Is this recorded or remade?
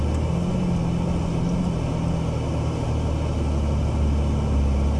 recorded